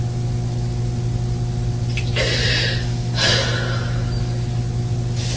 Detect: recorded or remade recorded